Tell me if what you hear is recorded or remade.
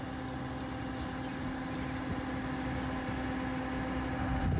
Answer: recorded